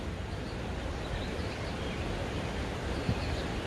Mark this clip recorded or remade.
recorded